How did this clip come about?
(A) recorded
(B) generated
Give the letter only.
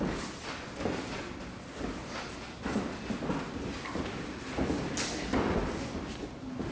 A